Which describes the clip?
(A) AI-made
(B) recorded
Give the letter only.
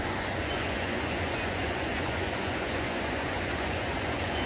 A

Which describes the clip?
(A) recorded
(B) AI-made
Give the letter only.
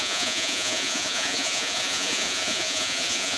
B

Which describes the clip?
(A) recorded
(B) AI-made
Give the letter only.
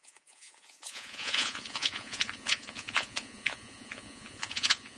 B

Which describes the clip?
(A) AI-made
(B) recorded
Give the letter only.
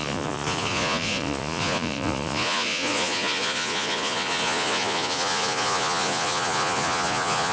A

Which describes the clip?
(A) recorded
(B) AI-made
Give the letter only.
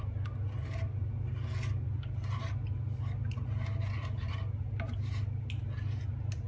A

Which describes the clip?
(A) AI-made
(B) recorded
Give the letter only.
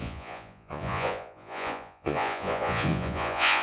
A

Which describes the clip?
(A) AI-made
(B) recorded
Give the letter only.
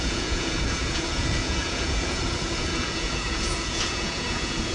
A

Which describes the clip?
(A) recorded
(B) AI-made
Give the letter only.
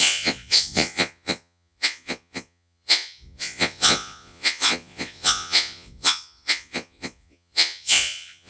B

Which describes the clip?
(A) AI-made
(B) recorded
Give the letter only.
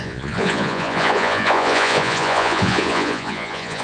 A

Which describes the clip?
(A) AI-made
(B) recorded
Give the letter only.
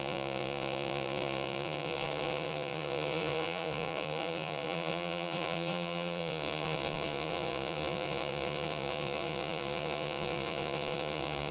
A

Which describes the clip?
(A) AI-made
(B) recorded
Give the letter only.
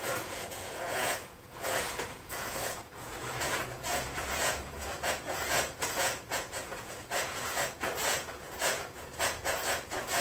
A